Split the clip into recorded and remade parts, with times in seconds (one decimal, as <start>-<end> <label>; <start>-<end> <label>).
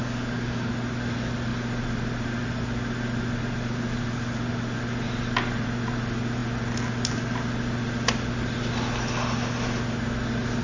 0.0-0.7 remade; 0.7-10.6 recorded